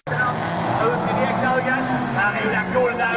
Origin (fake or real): real